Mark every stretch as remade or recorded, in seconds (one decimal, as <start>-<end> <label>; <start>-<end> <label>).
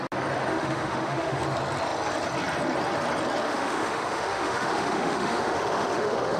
0.0-0.5 recorded; 0.5-1.4 remade; 1.4-3.4 recorded; 3.4-6.4 remade